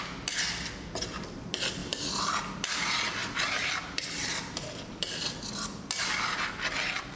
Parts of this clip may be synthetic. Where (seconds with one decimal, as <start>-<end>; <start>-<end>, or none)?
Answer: 1.8-2.4; 3.2-5.5